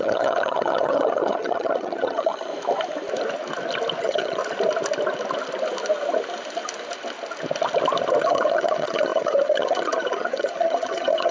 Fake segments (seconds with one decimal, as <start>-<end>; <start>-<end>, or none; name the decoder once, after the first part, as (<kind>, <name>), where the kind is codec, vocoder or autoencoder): 0.0-2.5 (vocoder, HiFi-GAN); 4.0-4.4; 8.2-11.3